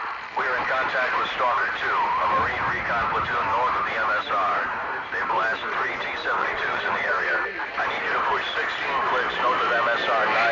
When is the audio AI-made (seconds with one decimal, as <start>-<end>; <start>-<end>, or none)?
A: 6.4-7.1